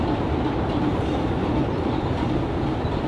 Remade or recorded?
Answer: recorded